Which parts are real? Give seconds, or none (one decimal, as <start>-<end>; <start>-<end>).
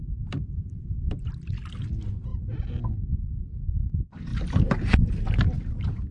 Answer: 1.3-6.1